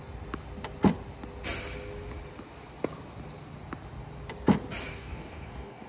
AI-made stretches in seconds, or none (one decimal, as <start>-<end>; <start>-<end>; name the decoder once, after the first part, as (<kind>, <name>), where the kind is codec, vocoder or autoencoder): 4.9-5.9 (codec, DAC)